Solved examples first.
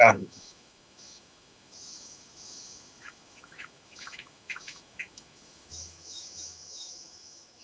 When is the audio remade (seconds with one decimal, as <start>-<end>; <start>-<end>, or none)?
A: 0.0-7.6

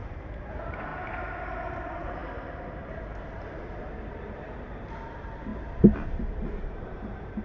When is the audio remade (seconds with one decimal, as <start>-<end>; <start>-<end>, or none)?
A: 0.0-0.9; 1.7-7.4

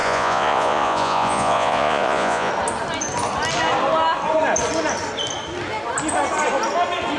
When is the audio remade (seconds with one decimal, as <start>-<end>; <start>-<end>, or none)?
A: 0.0-2.5